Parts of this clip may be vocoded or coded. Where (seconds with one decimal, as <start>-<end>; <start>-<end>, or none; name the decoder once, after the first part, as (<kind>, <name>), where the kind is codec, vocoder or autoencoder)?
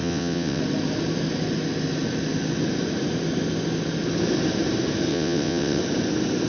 0.0-0.6 (vocoder, WaveNeXt); 5.1-5.8